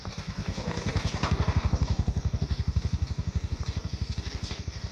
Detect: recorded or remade remade